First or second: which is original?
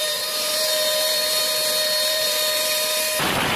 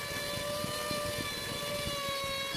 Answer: second